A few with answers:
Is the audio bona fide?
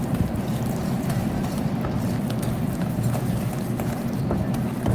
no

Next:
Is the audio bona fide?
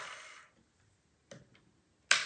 yes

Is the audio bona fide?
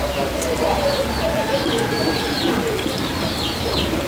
no